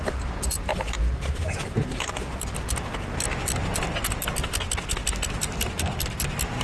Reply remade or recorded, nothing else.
recorded